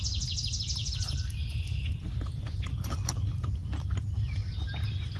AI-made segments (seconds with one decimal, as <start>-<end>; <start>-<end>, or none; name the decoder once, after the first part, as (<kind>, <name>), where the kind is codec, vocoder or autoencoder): none